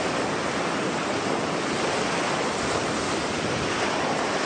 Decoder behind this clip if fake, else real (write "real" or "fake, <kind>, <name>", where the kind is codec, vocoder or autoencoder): real